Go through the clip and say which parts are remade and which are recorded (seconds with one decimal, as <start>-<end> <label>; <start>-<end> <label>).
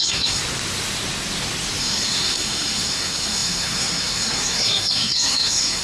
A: 0.0-0.4 remade; 0.4-1.8 recorded; 1.8-5.8 remade